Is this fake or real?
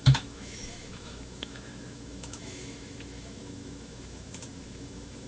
fake